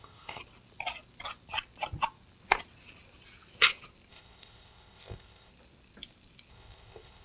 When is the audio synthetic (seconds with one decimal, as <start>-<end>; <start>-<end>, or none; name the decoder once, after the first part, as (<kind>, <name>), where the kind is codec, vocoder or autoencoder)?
0.0-0.4 (codec, ZipCodec); 4.1-5.5; 6.5-7.2